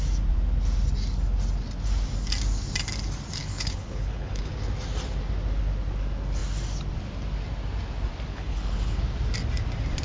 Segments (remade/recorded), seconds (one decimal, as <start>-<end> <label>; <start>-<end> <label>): 0.0-3.4 recorded; 3.4-4.5 remade; 4.5-8.3 recorded; 8.3-9.0 remade; 9.0-10.0 recorded